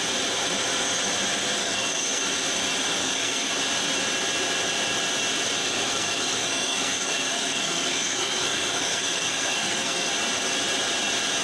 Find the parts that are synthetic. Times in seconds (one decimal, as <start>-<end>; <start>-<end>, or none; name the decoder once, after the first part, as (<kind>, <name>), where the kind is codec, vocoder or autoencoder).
1.6-2.2 (codec, SNAC); 3.0-3.5; 5.6-10.1